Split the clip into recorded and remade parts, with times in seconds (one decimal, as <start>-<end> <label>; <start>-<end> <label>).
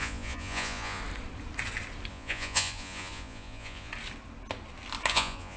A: 0.0-1.0 remade; 1.0-2.1 recorded; 2.1-3.9 remade; 3.9-5.1 recorded; 5.1-5.6 remade